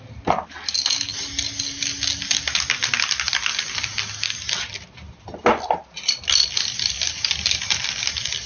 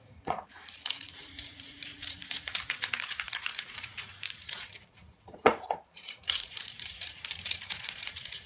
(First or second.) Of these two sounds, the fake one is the second